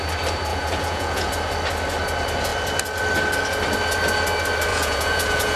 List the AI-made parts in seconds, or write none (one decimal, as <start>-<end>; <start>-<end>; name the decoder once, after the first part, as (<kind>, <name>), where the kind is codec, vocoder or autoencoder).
0.5-1.3 (vocoder, Vocos); 4.7-5.6